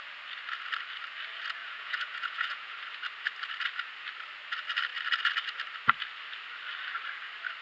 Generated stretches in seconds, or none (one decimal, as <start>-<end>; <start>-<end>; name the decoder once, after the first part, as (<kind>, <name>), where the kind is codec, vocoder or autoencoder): 1.6-2.7 (vocoder, Vocos)